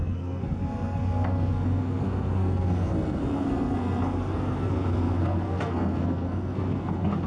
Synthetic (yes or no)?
yes